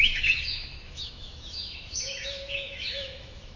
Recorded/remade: remade